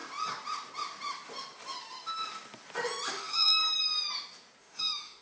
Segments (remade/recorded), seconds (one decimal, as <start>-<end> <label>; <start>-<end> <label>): 0.0-3.1 recorded; 3.1-3.6 remade; 3.6-4.6 recorded; 4.6-5.2 remade